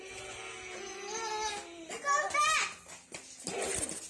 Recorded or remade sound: recorded